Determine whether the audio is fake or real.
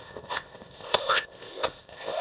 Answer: fake